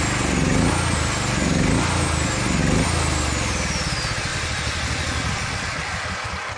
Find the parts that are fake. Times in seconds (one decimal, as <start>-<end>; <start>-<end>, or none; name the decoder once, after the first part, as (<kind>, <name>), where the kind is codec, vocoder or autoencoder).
none